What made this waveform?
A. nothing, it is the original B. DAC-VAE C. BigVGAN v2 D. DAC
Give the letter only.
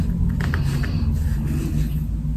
A